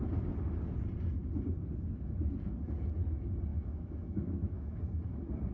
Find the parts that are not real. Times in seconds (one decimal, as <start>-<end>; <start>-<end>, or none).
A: 3.5-4.8